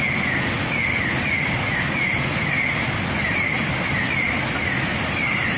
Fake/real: real